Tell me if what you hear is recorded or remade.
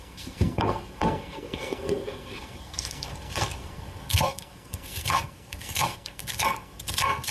remade